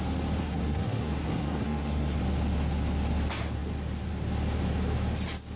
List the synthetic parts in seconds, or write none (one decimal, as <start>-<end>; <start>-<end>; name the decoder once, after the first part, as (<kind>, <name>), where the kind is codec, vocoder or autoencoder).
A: 0.4-2.2 (codec, SNAC)